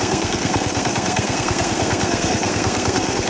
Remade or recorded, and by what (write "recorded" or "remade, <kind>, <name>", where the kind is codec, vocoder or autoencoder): remade, codec, SNAC